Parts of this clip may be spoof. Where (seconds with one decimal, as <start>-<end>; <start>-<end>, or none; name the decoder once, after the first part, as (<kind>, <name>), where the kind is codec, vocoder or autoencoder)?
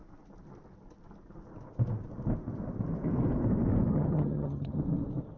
3.9-4.8 (vocoder, HiFi-GAN)